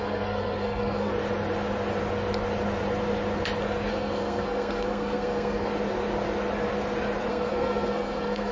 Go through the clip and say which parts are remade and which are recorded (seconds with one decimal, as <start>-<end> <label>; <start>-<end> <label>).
0.0-1.1 remade; 1.1-3.9 recorded; 3.9-5.7 remade; 5.7-7.3 recorded; 7.3-8.5 remade